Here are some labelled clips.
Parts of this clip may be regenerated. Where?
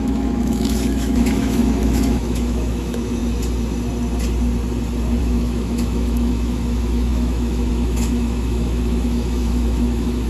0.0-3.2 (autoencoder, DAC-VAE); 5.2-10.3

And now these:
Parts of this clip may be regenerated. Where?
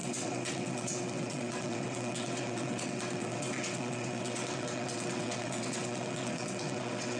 0.0-7.2 (vocoder, WaveNeXt)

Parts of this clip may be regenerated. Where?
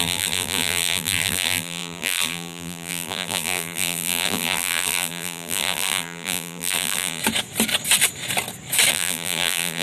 0.0-7.2 (vocoder, BigVGAN v2); 8.9-9.8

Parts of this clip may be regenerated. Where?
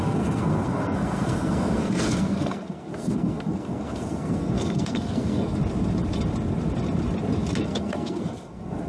0.0-5.6 (codec, SNAC); 7.6-8.9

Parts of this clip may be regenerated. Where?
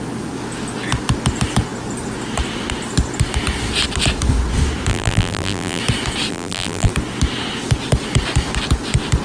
4.9-5.8 (vocoder, BigVGAN v2); 6.3-6.9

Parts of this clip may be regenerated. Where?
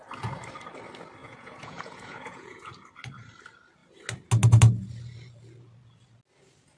1.2-2.7 (vocoder, Vocos)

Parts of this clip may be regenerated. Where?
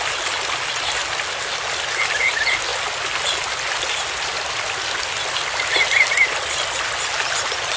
none